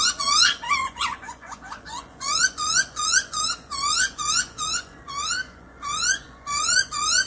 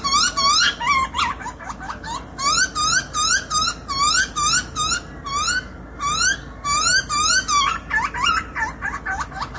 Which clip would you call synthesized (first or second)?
first